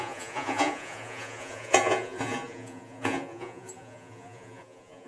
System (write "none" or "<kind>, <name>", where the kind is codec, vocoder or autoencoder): vocoder, Vocos